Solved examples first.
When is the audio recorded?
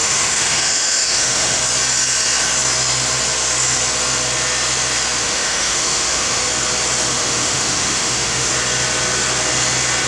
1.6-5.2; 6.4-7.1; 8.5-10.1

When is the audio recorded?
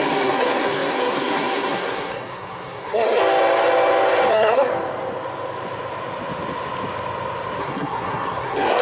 3.2-4.3; 4.7-7.6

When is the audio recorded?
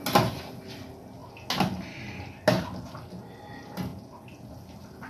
0.0-5.1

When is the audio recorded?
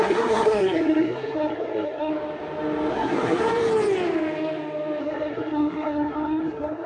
2.1-2.9; 3.4-5.0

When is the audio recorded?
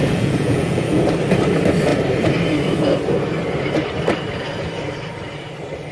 1.0-5.9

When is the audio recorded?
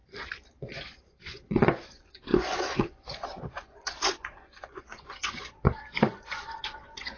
0.0-0.6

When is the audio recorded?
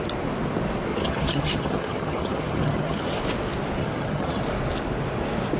0.0-0.9; 3.2-3.8; 4.4-5.6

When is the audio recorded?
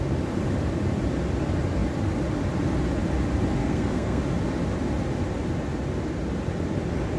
0.0-3.6; 4.2-7.2